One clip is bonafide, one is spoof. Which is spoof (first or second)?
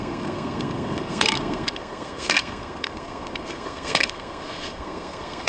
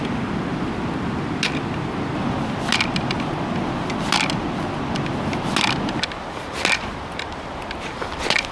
first